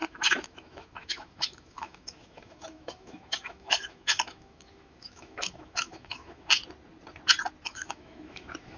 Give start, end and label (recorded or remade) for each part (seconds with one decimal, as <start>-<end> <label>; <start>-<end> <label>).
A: 0.0-6.6 remade; 6.6-7.7 recorded; 7.7-8.8 remade